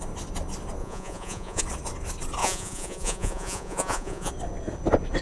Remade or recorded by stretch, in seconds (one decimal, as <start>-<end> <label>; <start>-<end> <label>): 0.0-0.8 recorded; 0.8-1.6 remade; 1.6-2.4 recorded; 2.4-4.3 remade; 4.3-5.2 recorded